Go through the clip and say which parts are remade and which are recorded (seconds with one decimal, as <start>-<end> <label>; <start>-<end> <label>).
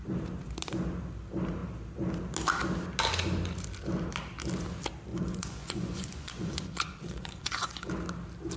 0.0-5.1 recorded; 5.1-7.9 remade; 7.9-8.6 recorded